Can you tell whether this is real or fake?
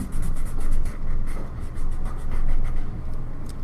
real